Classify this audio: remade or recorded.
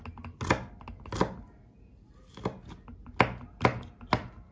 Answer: recorded